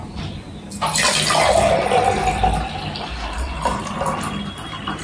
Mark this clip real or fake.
real